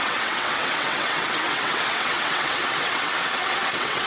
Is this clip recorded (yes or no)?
no